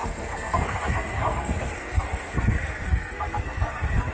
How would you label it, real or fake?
fake